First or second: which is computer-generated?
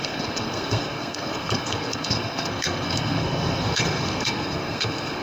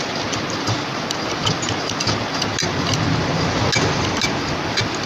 first